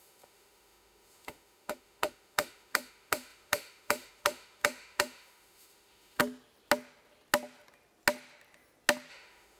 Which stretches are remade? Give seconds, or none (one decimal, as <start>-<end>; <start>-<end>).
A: 0.0-6.2; 9.1-9.6